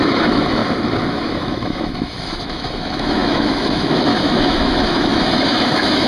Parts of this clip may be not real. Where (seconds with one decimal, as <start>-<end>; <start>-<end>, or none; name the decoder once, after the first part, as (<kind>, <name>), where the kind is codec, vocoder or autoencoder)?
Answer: 0.0-0.6 (autoencoder, DAC-VAE); 1.1-6.1